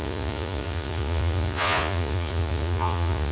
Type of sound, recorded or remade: remade